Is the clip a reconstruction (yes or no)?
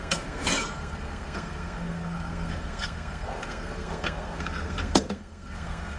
yes